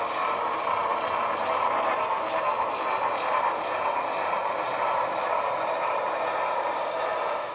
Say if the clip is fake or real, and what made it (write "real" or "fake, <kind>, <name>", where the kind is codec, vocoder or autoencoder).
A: real